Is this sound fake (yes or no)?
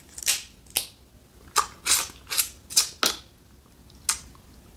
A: no